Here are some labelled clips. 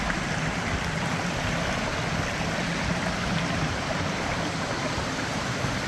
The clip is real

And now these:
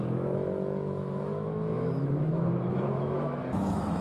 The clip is fake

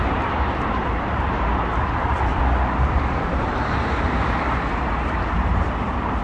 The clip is real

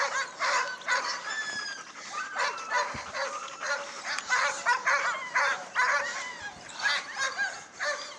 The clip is real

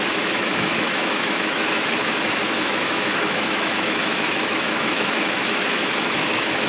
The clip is fake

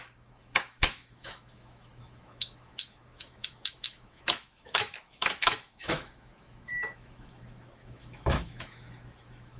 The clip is fake